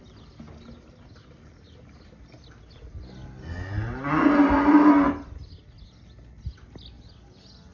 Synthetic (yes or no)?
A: no